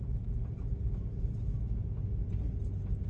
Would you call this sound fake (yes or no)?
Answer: no